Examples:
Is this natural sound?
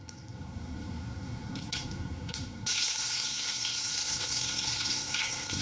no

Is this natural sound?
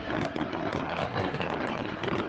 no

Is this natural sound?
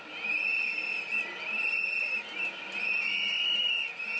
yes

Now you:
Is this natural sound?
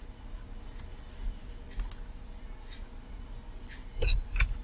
yes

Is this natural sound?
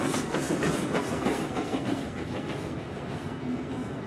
no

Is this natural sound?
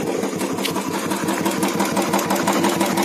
yes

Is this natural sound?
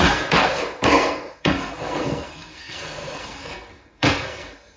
no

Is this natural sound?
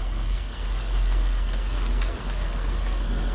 no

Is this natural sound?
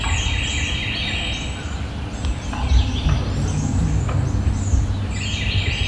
yes